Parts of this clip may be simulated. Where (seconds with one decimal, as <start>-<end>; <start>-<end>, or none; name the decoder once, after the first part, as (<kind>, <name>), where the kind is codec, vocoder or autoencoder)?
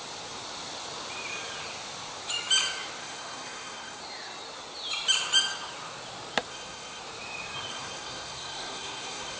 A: 3.0-4.0 (codec, SNAC); 6.5-7.0; 7.7-9.4